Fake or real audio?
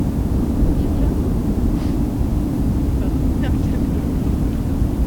real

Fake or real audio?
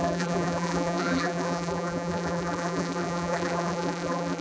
fake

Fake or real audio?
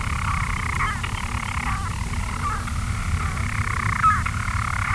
real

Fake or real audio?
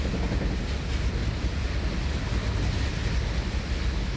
real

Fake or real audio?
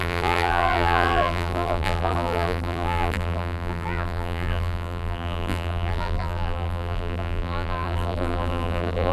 fake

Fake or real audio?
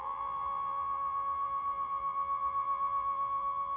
fake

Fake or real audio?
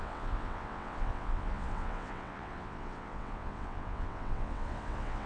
fake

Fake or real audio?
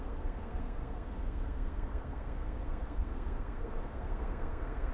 fake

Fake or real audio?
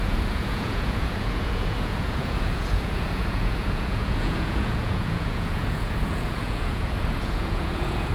fake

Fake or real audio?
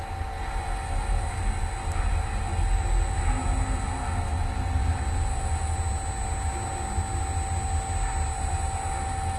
real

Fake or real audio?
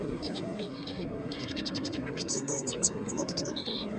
fake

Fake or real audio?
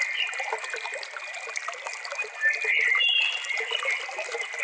real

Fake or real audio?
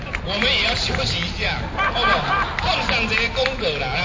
real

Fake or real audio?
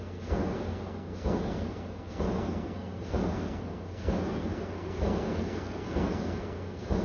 fake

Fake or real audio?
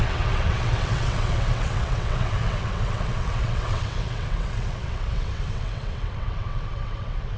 fake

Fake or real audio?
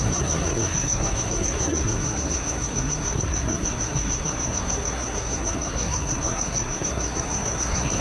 fake